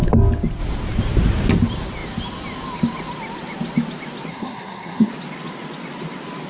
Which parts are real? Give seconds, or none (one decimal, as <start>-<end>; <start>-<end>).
0.0-4.3; 5.1-6.5